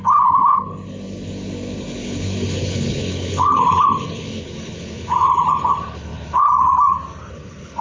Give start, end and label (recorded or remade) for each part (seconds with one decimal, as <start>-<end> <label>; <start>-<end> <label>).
0.0-6.5 remade; 6.5-7.3 recorded; 7.3-7.8 remade